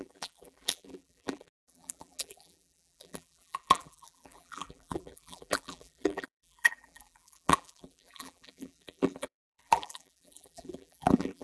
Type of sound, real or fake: fake